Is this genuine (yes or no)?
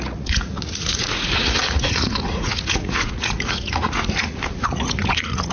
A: no